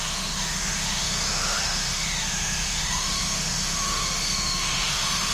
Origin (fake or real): fake